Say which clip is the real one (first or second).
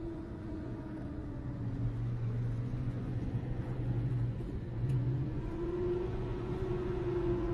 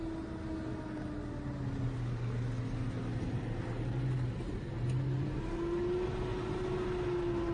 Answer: second